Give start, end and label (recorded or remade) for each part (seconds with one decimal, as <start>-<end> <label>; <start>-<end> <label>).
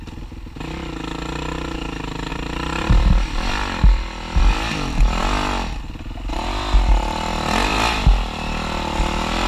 0.0-2.3 recorded; 2.3-5.2 remade; 5.2-9.5 recorded